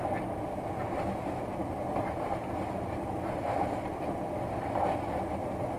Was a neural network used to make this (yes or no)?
no